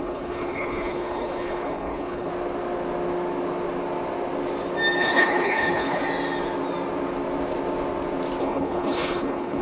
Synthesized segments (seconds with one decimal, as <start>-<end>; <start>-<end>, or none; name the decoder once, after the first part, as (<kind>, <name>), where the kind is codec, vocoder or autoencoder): 0.0-2.3 (codec, HILCodec); 5.0-6.0; 8.4-9.6